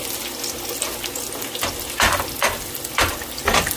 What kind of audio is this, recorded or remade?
recorded